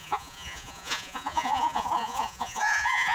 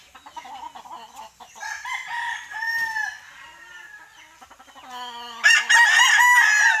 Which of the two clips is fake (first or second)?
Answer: first